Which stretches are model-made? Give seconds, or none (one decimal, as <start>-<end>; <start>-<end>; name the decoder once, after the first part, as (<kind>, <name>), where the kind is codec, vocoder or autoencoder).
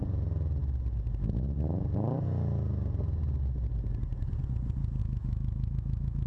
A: 5.0-6.3 (autoencoder, DAC-VAE)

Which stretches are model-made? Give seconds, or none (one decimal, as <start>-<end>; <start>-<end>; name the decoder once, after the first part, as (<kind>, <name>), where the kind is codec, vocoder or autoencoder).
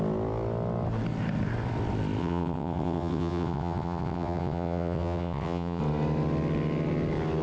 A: 2.2-5.8 (vocoder, WaveNeXt)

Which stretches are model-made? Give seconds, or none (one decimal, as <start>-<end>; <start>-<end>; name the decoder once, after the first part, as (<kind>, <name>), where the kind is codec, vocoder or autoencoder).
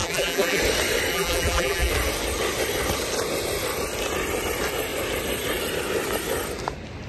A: 0.0-0.6 (vocoder, BigVGAN v2); 1.1-1.9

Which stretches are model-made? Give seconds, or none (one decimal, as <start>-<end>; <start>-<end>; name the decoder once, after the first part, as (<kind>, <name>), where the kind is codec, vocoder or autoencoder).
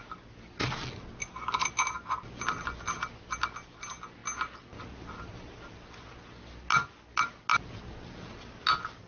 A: none